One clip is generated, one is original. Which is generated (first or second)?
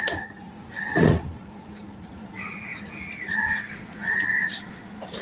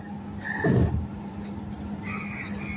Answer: first